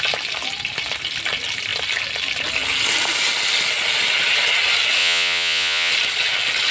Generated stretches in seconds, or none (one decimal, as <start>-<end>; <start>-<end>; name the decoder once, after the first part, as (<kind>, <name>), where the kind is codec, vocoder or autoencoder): 5.0-5.9 (vocoder, Vocos)